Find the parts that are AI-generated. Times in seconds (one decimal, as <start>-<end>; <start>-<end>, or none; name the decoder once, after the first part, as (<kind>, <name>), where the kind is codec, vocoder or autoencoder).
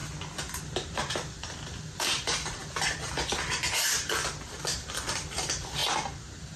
0.9-6.6 (vocoder, BigVGAN v2)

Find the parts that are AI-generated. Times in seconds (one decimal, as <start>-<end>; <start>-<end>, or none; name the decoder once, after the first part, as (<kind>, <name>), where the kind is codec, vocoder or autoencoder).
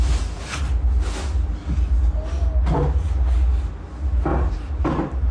4.3-5.3 (vocoder, BigVGAN v2)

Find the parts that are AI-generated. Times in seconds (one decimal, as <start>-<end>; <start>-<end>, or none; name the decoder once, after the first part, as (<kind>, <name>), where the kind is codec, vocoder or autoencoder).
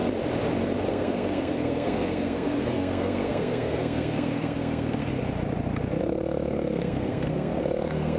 0.9-5.1 (codec, SNAC); 6.0-8.2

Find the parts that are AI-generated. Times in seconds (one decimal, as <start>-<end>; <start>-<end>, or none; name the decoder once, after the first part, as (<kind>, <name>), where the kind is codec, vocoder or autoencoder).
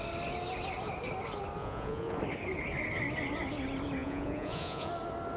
1.6-2.2 (vocoder, Vocos); 4.0-4.9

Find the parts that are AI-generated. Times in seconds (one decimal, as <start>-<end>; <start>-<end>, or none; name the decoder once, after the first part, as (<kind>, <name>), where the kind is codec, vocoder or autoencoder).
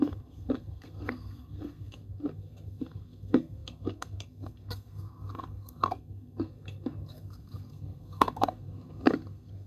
0.0-9.7 (codec, SNAC)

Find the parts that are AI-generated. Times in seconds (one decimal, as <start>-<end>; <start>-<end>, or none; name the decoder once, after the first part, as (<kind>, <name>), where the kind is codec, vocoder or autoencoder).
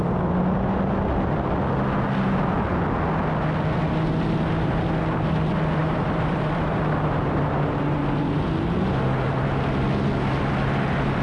5.8-9.5 (vocoder, BigVGAN v2)